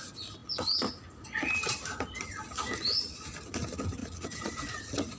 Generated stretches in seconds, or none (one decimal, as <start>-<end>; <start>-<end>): 4.0-5.2